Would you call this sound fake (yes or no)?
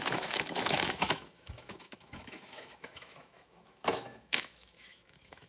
yes